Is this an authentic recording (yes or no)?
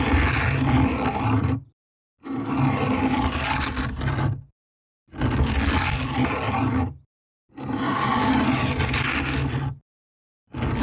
yes